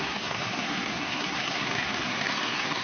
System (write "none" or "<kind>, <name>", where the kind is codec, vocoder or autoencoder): codec, SNAC